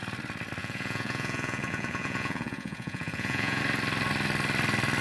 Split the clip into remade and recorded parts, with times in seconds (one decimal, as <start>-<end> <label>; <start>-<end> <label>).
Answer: 0.0-0.6 recorded; 0.6-3.6 remade; 3.6-5.0 recorded